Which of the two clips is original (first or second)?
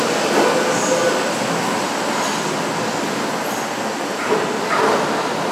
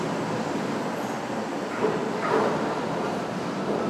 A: first